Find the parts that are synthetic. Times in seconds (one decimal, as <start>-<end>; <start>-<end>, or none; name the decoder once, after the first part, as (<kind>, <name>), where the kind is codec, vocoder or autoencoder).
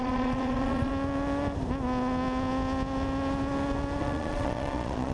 0.0-0.9 (vocoder, Vocos); 4.0-5.1